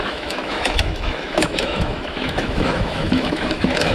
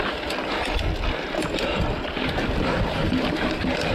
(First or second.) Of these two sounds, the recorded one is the second